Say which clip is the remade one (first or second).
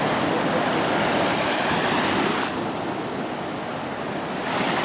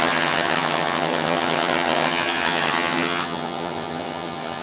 second